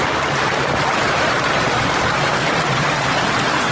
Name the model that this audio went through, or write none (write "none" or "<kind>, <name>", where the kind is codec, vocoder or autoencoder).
none